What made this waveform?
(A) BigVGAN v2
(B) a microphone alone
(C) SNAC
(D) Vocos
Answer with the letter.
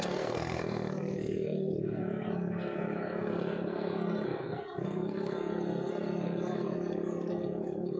C